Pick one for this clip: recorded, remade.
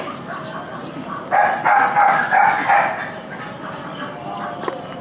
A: recorded